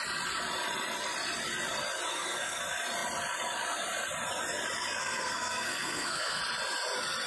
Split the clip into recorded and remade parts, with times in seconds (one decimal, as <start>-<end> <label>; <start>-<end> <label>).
0.0-2.1 recorded; 2.1-2.6 remade; 2.6-5.0 recorded; 5.0-6.4 remade; 6.4-7.3 recorded